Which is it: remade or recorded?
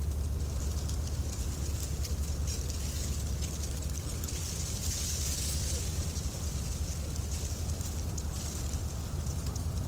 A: recorded